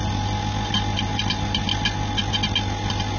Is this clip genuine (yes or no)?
yes